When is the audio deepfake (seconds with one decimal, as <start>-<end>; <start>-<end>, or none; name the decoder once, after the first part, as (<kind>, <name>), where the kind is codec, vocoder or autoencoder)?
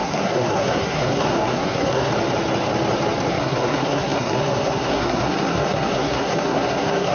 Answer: 0.0-2.1 (codec, SNAC); 3.3-7.1